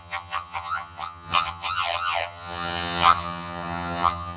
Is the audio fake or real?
fake